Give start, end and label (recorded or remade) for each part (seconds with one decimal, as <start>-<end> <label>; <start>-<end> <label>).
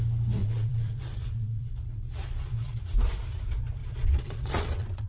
0.0-0.4 recorded; 0.4-2.8 remade; 2.8-3.8 recorded; 3.8-5.1 remade